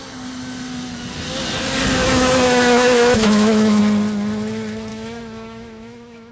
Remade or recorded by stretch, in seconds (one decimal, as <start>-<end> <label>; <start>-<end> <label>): 0.0-2.1 recorded; 2.1-3.8 remade; 3.8-4.9 recorded; 4.9-6.3 remade